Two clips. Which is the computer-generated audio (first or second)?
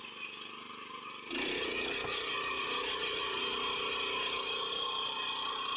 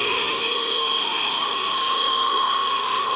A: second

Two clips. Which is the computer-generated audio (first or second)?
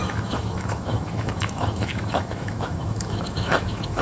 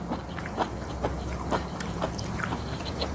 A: first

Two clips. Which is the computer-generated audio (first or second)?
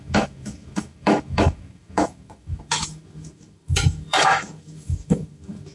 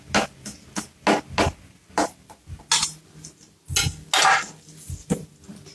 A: first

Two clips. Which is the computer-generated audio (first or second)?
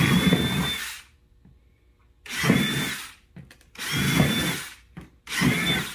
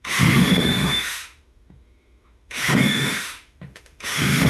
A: second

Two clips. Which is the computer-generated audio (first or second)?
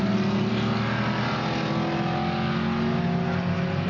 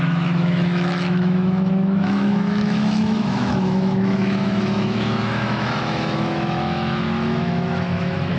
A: second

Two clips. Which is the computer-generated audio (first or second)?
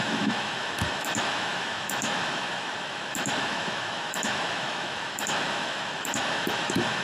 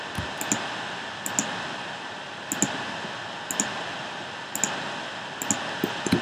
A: first